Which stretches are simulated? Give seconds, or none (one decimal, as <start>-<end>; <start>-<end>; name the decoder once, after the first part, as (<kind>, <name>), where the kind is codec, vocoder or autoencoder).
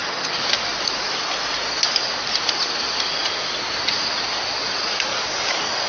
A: 5.1-5.9 (codec, DAC)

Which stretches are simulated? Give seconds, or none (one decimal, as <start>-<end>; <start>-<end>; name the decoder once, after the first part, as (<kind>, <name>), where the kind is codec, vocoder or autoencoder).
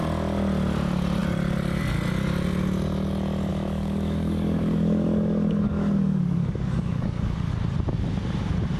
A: 3.5-7.5 (codec, DAC)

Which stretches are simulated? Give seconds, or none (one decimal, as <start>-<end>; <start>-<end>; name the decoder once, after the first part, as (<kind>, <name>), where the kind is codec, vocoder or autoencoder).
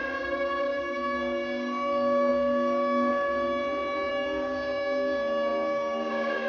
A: 0.0-3.6 (codec, DAC); 4.1-6.5